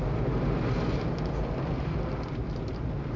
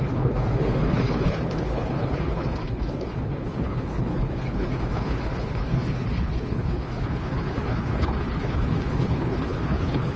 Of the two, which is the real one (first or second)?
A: first